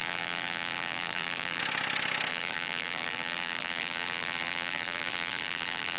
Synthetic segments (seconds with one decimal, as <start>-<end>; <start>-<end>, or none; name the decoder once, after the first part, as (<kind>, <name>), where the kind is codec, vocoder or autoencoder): 0.0-1.6 (vocoder, BigVGAN v2); 2.3-6.0